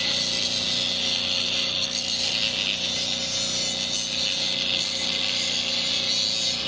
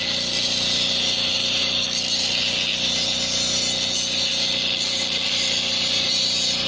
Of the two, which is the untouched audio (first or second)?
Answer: first